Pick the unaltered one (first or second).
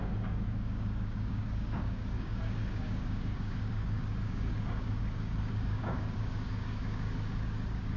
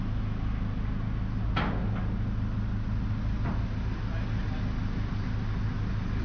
second